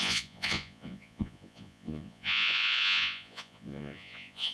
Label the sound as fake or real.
fake